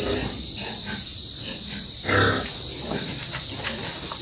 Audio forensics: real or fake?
real